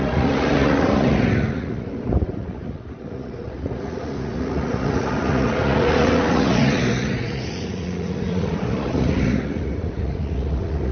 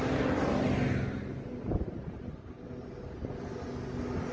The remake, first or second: first